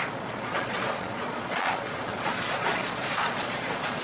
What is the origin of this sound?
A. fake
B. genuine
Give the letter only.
A